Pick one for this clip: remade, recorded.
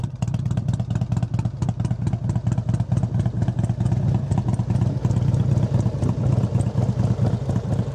recorded